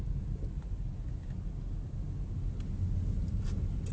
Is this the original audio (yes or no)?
yes